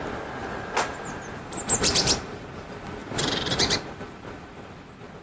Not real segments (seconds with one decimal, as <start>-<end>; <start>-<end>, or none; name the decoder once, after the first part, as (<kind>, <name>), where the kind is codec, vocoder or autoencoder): 0.4-2.3 (vocoder, BigVGAN v2); 3.0-3.9